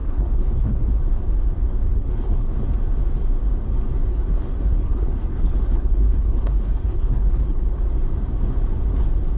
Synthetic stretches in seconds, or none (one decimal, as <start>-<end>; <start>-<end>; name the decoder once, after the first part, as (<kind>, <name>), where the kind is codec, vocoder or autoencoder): 0.0-0.8 (codec, HILCodec); 1.9-2.5; 4.1-7.8